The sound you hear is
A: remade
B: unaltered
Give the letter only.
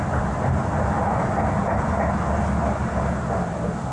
B